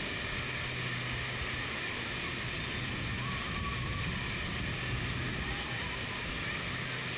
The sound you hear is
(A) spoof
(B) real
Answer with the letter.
B